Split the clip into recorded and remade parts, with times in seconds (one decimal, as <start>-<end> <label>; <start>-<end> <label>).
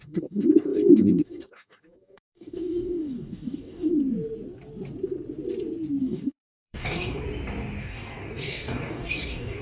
0.0-3.9 remade; 3.9-6.0 recorded; 6.0-7.2 remade; 7.2-7.8 recorded; 7.8-9.6 remade